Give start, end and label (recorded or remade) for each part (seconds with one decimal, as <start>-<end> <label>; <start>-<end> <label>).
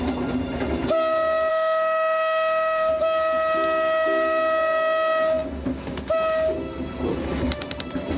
0.0-1.5 recorded; 1.5-2.9 remade; 2.9-8.2 recorded